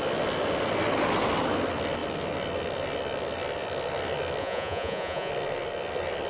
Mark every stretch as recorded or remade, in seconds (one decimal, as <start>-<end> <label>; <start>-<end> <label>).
0.0-4.4 recorded; 4.4-5.3 remade; 5.3-6.3 recorded